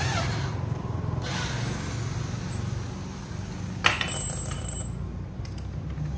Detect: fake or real real